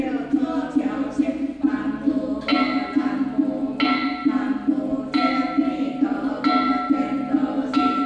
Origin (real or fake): real